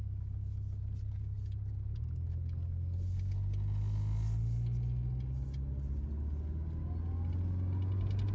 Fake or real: real